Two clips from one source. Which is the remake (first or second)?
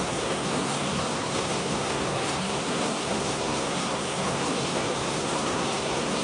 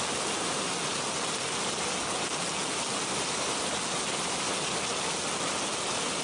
first